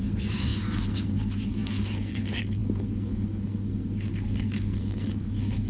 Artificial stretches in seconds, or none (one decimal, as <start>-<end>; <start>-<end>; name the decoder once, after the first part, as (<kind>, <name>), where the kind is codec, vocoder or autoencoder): 0.0-5.7 (codec, SNAC)